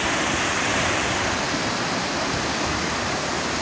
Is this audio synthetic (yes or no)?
no